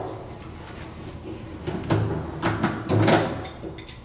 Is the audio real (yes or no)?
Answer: yes